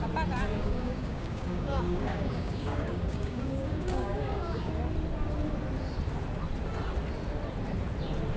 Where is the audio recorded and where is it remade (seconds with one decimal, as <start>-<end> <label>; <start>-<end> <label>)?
0.0-0.5 recorded; 0.5-4.7 remade; 4.7-8.4 recorded